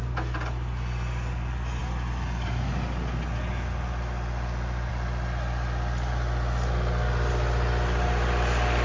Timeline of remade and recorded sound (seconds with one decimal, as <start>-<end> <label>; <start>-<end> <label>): 0.0-8.8 recorded